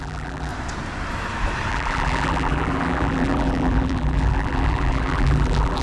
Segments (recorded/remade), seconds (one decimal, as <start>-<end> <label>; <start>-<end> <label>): 0.0-0.5 remade; 0.5-1.7 recorded; 1.7-5.8 remade